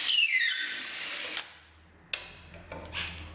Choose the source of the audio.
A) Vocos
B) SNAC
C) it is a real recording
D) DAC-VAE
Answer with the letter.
C